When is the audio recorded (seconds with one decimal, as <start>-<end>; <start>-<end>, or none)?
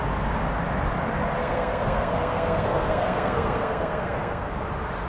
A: 0.0-1.4; 4.5-5.1